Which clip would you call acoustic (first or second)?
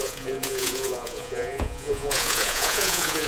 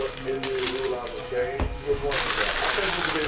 second